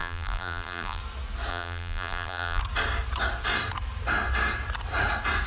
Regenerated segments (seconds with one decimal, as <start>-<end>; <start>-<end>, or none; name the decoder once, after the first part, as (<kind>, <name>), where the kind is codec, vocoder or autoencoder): 0.0-1.0 (vocoder, BigVGAN v2); 1.5-2.6